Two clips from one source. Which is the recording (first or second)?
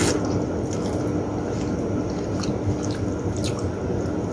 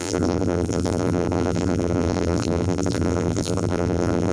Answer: first